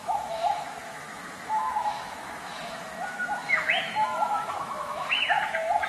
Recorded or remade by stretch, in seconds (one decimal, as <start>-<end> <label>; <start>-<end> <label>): 0.0-5.9 remade